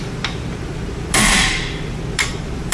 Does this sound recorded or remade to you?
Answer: remade